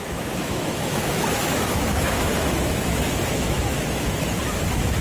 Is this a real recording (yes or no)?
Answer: no